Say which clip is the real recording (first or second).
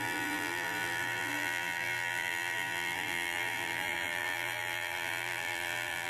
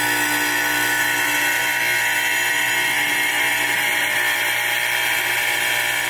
second